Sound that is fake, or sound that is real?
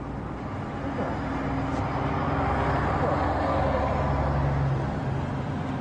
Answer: real